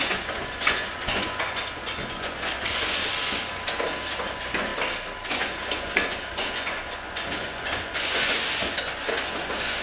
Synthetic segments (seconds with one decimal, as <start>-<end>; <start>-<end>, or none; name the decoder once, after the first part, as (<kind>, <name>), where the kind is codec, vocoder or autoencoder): 0.0-3.0 (vocoder, Vocos); 3.5-4.7; 5.3-9.8